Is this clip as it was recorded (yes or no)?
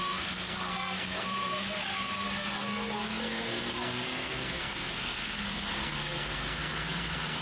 no